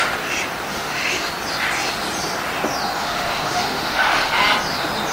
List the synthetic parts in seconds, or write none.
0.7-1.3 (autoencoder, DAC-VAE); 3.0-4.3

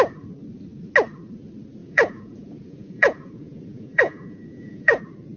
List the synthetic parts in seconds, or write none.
1.8-5.0 (vocoder, Vocos)

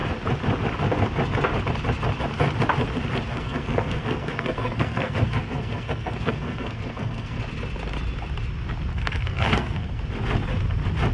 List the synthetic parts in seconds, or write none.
3.3-7.4 (codec, SNAC); 8.9-10.0

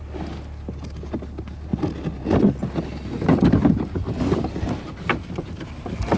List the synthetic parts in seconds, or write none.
none

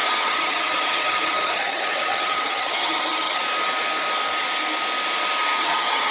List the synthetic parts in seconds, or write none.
0.0-3.4 (vocoder, HiFi-GAN); 5.6-6.1

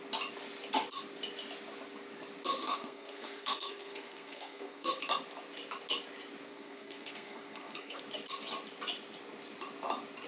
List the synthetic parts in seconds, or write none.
2.6-4.9 (codec, SNAC); 6.5-8.0

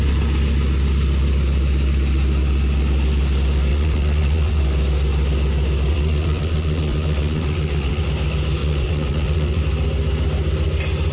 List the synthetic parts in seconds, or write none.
3.7-4.6 (vocoder, WaveNeXt); 5.9-8.0; 8.6-9.6